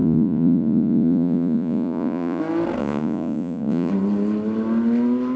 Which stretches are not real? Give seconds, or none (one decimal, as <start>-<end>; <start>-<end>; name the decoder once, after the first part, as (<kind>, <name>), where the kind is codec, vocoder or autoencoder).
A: 0.0-2.4 (vocoder, Vocos); 2.8-3.9